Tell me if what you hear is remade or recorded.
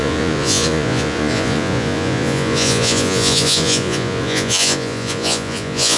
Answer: remade